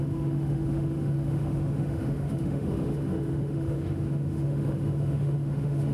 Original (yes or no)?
no